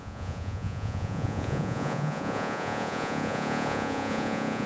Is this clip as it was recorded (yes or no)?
no